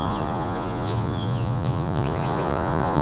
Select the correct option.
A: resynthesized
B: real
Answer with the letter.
A